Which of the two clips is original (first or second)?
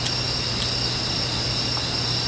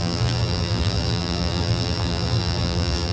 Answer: first